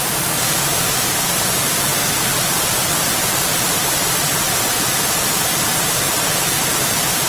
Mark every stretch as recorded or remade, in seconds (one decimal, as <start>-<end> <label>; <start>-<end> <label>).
0.0-4.3 remade; 4.3-4.9 recorded; 4.9-7.3 remade